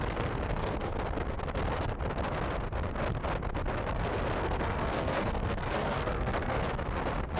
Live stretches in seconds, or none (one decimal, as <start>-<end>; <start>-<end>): 0.9-4.4; 6.6-7.4